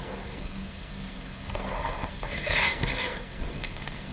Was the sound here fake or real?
fake